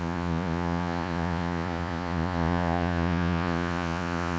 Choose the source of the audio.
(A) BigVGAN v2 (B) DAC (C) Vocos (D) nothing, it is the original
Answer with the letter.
C